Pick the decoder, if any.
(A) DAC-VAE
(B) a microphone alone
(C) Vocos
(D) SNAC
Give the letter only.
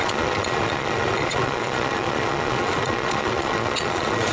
C